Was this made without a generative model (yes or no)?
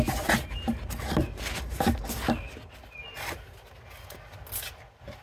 yes